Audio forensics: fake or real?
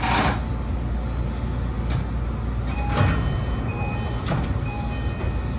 real